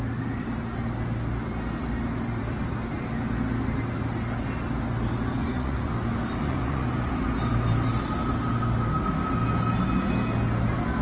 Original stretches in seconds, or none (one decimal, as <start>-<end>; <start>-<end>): 0.0-5.4; 5.9-6.4; 7.1-11.0

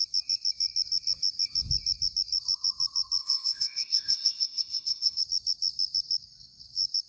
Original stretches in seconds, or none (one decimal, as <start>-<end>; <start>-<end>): 0.0-3.2; 5.2-7.1

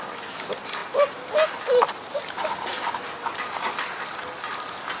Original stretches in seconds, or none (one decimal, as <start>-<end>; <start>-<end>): 0.0-5.0

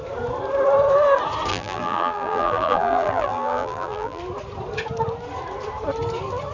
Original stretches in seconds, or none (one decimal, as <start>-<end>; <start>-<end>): 0.0-1.5; 4.2-6.5

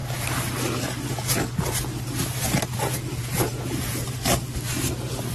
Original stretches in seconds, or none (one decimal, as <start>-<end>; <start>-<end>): 0.0-5.3